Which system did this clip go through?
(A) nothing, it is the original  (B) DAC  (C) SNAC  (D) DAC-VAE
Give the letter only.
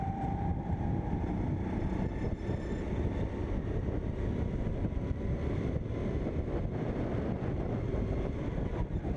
A